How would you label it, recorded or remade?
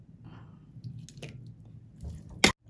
recorded